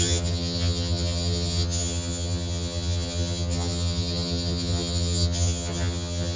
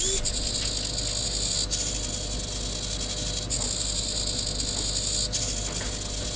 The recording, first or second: second